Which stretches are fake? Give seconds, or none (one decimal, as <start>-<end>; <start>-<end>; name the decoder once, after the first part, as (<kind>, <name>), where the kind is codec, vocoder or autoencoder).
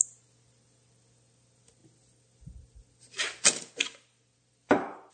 none